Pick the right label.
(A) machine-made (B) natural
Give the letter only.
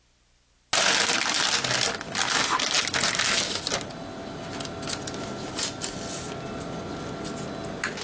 B